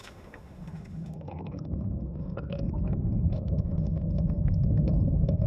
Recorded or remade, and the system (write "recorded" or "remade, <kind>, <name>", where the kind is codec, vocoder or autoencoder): remade, autoencoder, DAC-VAE